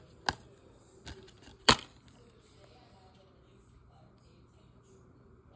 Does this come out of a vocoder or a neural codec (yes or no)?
no